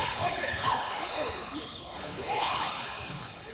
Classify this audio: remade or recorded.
remade